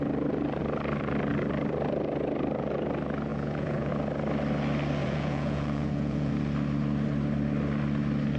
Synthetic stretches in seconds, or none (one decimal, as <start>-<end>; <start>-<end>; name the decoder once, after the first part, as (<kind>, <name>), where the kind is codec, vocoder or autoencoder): 3.3-3.9 (vocoder, Vocos); 5.0-6.3